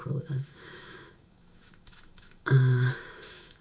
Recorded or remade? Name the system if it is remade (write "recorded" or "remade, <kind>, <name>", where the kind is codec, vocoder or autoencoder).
remade, autoencoder, DAC-VAE